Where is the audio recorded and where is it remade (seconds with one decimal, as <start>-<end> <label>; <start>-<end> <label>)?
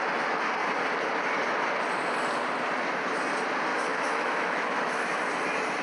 0.0-3.7 recorded; 3.7-5.1 remade; 5.1-5.8 recorded